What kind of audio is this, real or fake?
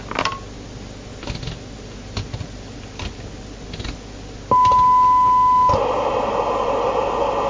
real